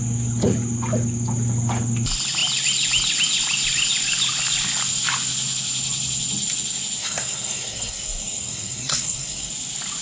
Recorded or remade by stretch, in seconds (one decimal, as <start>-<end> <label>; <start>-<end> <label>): 0.0-7.0 recorded; 7.0-9.5 remade; 9.5-10.0 recorded